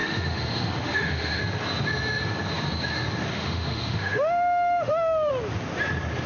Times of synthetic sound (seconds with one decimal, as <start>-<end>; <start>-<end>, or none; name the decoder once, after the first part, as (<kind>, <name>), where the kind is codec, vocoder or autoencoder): 0.0-1.4 (autoencoder, DAC-VAE); 3.3-5.3